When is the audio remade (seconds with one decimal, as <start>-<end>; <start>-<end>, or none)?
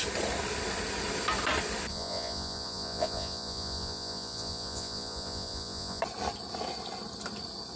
1.9-6.0